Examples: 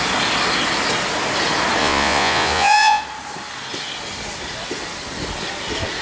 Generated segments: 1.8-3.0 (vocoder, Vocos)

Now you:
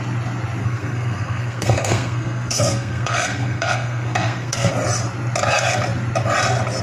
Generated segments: 0.6-4.7 (codec, SNAC)